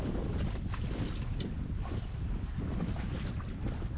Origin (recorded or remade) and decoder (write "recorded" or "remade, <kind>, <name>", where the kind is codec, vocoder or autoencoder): recorded